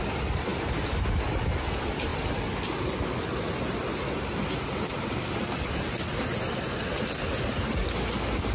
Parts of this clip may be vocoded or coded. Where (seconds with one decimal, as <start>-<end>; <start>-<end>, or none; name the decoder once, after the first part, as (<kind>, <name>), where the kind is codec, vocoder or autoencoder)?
none